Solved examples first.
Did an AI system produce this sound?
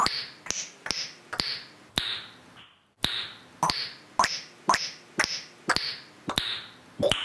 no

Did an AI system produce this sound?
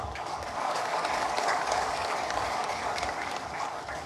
yes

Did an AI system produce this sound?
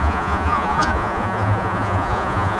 yes